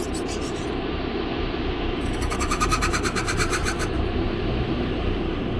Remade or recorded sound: remade